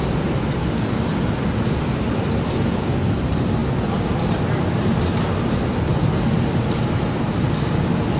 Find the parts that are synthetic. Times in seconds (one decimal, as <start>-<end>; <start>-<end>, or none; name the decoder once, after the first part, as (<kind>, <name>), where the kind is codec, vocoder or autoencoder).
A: none